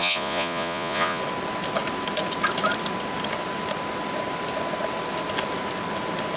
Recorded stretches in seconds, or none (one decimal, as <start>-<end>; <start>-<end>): 1.2-6.4